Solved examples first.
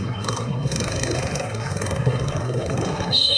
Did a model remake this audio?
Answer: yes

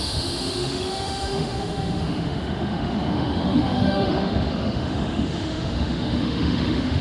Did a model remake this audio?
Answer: yes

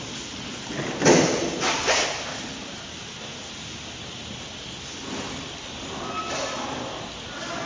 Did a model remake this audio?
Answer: no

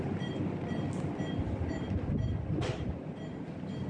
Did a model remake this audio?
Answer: no